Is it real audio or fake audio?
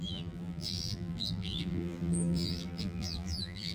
fake